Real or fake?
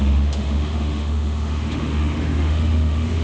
fake